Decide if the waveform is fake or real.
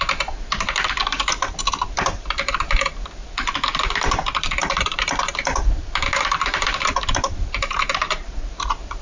fake